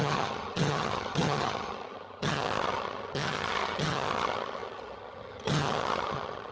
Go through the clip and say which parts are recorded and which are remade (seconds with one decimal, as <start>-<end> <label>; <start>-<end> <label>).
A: 0.0-6.5 remade

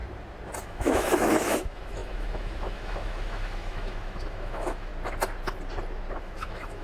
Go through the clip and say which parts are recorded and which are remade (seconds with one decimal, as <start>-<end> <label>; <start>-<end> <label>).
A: 0.0-0.6 recorded; 0.6-4.9 remade; 4.9-6.2 recorded; 6.2-6.8 remade

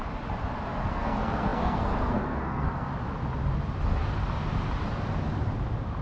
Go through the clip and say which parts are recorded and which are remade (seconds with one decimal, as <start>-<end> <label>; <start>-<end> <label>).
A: 0.0-0.9 recorded; 0.9-2.9 remade; 2.9-6.0 recorded

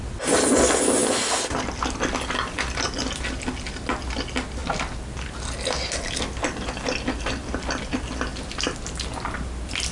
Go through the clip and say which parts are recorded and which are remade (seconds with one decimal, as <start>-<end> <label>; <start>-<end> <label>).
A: 0.0-9.9 recorded